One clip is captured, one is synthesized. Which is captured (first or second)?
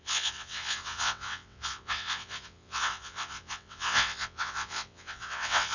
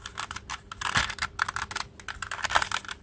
second